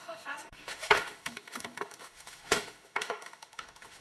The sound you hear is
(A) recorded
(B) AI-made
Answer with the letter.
B